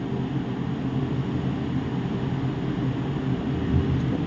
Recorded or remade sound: recorded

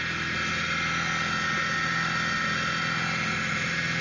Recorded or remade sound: recorded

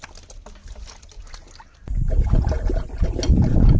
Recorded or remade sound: recorded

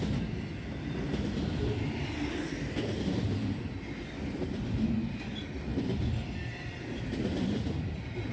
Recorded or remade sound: recorded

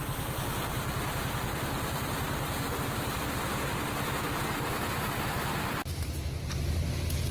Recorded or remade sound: recorded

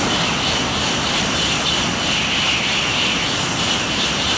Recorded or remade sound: recorded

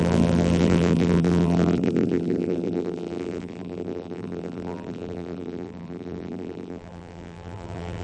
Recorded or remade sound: remade